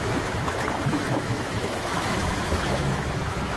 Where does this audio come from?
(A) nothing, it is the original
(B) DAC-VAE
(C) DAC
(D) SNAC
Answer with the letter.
B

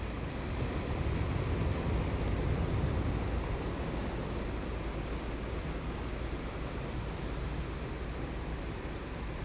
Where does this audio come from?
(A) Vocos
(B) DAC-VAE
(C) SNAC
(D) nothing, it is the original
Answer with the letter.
D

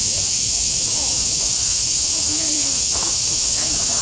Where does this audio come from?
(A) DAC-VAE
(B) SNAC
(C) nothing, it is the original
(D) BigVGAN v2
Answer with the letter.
A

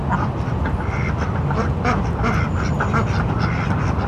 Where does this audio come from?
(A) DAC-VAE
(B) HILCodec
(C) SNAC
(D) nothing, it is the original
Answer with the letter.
D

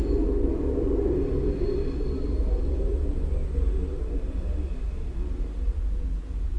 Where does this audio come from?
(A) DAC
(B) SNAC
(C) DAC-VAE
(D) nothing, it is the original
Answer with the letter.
D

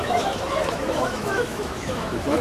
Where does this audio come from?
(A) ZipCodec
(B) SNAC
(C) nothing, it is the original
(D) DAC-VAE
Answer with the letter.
D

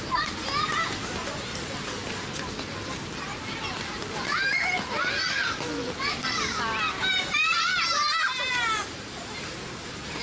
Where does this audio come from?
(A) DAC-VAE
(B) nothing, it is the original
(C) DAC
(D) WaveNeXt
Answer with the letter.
B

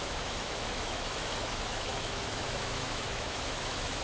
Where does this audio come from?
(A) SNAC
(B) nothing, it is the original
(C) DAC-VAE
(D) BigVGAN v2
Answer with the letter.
C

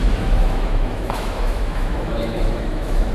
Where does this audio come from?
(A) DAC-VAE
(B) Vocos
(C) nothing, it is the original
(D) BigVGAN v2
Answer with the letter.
A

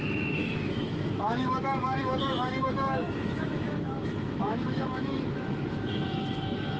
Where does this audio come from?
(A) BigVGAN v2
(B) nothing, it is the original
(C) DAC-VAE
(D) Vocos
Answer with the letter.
C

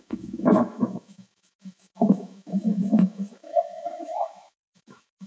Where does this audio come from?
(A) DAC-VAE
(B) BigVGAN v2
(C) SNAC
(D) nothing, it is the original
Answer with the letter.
A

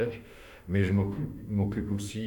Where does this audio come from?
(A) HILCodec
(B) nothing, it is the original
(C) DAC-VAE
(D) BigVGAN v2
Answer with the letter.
C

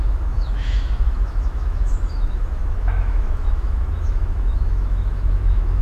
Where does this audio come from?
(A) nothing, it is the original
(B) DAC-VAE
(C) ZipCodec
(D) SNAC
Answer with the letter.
B